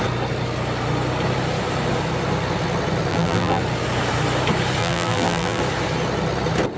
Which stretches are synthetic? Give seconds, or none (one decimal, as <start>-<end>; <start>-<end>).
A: 3.1-3.6; 4.8-5.6